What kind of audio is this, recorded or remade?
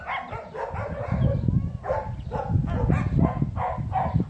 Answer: recorded